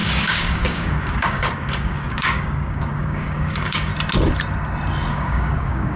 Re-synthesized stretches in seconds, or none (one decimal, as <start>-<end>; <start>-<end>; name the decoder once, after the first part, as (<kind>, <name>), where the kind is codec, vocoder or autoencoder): 0.0-3.9 (codec, DAC); 5.1-6.0